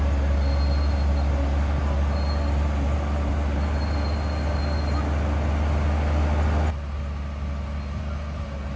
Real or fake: real